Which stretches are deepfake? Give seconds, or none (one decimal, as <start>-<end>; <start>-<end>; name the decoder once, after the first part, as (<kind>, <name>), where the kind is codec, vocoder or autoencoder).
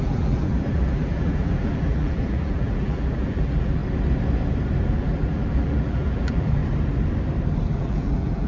0.0-3.8 (vocoder, BigVGAN v2); 4.9-6.6; 7.8-8.5